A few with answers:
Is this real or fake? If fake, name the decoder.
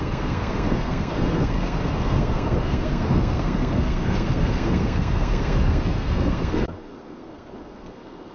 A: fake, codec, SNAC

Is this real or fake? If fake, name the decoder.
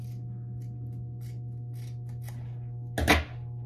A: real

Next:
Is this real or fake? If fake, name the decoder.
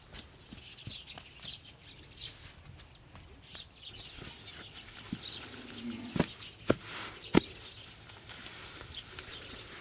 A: real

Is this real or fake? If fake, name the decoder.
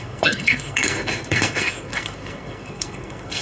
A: fake, codec, SNAC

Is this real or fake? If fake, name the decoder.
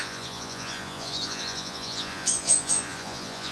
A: fake, vocoder, Vocos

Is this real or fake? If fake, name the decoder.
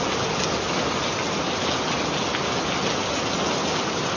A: real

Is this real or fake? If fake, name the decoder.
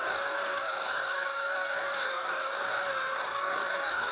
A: fake, codec, DAC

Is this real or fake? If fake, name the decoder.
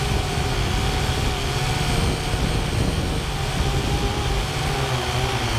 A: real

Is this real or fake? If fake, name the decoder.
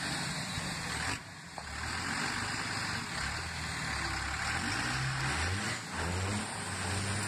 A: real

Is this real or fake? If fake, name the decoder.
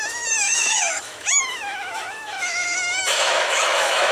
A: fake, autoencoder, DAC-VAE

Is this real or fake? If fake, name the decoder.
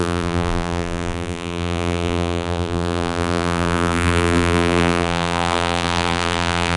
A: fake, vocoder, BigVGAN v2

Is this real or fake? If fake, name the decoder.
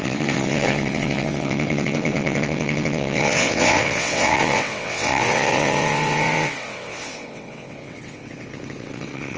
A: fake, vocoder, WaveNeXt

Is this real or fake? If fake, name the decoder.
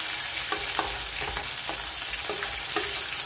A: real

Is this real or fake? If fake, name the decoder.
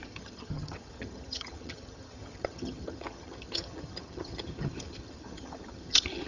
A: fake, vocoder, HiFi-GAN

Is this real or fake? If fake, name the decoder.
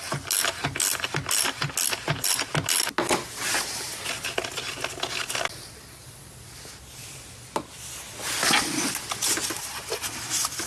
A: real